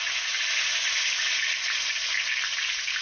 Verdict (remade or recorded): recorded